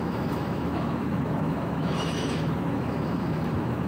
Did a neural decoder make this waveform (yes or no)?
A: yes